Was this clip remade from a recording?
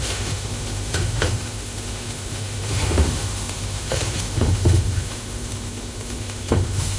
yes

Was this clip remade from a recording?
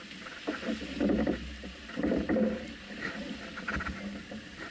no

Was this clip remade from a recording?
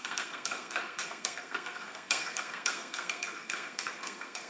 yes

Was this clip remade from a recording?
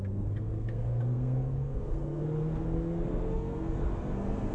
yes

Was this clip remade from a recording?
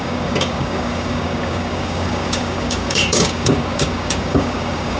yes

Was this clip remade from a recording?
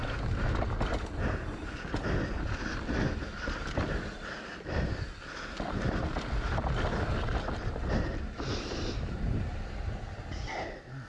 no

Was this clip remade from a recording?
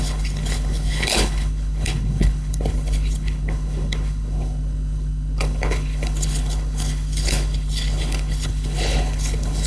yes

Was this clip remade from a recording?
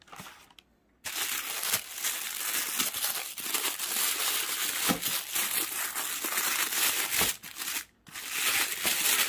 no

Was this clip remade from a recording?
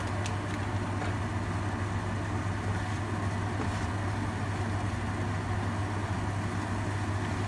no